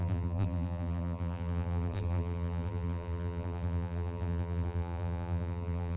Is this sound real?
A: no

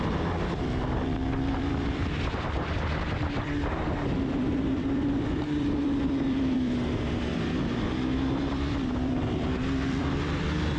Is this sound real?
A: no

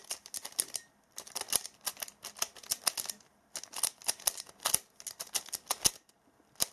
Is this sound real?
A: yes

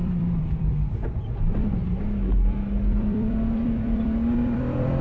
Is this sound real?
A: no